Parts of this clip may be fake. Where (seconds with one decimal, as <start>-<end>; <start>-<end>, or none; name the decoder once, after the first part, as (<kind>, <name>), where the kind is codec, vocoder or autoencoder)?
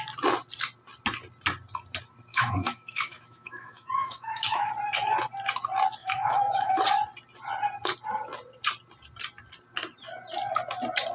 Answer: 2.3-4.7 (autoencoder, DAC-VAE); 6.0-6.8